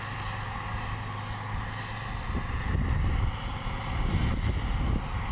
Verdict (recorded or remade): recorded